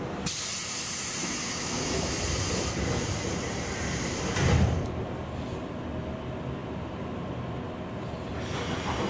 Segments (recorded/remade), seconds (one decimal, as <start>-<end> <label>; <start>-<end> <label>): 0.0-1.2 recorded; 1.2-2.2 remade; 2.2-9.1 recorded